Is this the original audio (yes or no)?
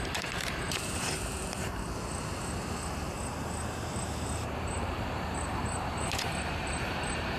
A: no